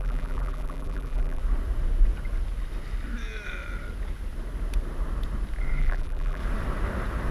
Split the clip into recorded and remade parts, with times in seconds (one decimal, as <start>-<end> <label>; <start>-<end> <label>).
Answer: 0.0-1.4 remade; 1.4-5.8 recorded; 5.8-6.4 remade; 6.4-7.3 recorded